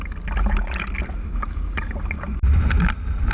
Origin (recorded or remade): recorded